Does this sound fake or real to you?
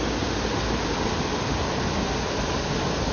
real